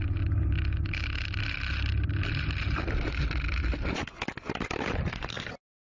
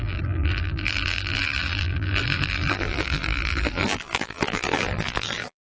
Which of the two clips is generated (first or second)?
second